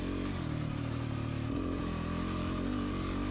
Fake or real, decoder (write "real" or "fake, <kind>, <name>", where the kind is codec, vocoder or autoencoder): real